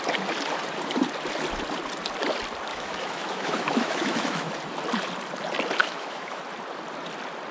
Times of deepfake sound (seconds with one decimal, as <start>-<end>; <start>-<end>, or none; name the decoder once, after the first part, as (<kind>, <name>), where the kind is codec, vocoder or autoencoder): 2.7-4.5 (autoencoder, DAC-VAE); 5.8-6.4